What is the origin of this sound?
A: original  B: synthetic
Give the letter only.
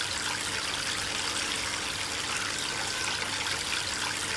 A